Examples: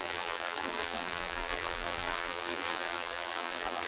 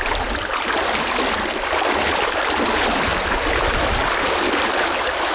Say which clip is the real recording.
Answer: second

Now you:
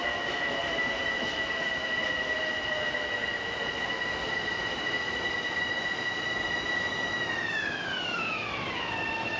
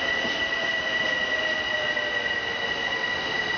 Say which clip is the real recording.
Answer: second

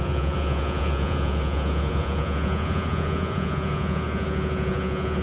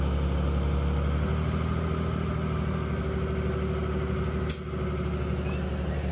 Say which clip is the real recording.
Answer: second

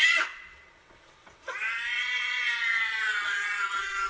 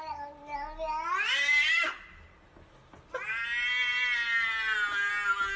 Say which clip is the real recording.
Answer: second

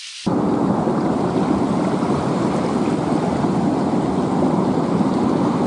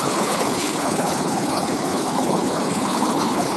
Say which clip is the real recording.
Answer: first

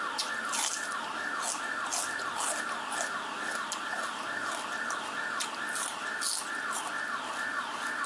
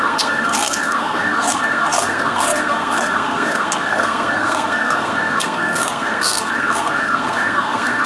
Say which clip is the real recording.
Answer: first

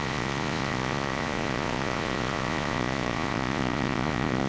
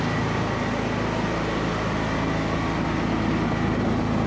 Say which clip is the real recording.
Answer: second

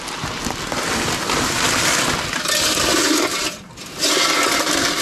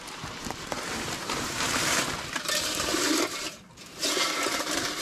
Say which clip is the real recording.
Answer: first